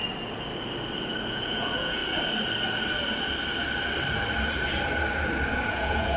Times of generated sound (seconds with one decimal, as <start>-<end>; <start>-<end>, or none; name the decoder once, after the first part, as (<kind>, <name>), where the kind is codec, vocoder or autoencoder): 1.3-2.0 (vocoder, Vocos); 5.7-6.2